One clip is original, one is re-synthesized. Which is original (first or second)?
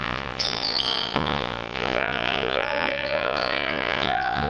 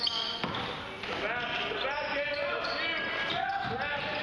second